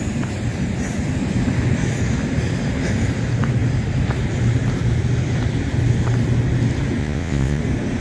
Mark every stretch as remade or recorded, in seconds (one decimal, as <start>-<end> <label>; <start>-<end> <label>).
0.0-7.0 recorded; 7.0-7.6 remade; 7.6-8.0 recorded